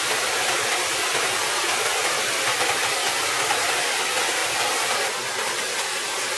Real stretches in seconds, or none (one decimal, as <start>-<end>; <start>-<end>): 0.0-6.4